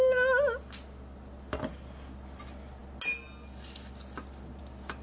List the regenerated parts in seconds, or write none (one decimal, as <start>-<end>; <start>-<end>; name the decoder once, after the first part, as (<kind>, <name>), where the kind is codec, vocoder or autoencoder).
none